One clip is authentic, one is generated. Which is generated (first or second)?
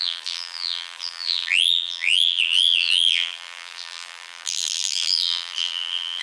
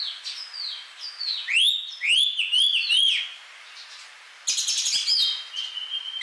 first